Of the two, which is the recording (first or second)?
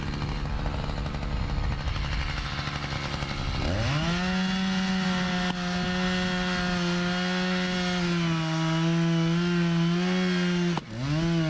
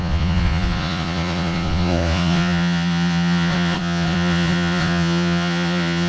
first